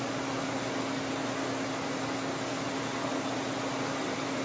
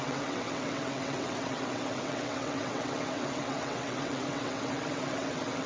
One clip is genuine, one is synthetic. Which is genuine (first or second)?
first